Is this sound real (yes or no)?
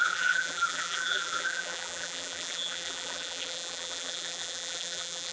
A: no